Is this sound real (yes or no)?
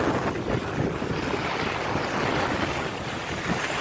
yes